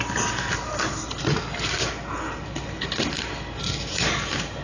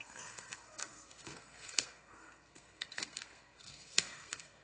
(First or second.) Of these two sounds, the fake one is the second